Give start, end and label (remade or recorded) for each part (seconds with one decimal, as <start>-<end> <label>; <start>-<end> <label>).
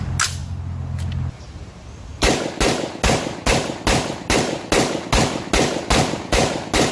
0.0-6.9 recorded